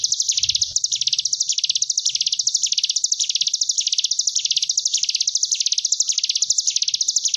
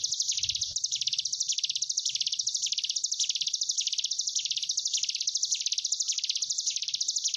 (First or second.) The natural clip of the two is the first